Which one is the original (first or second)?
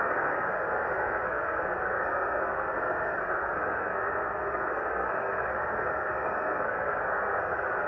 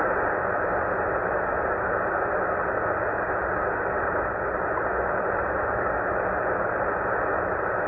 second